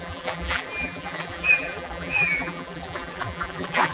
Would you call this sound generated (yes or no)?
yes